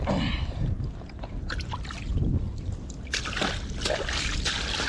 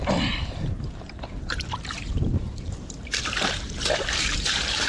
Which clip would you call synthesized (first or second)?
second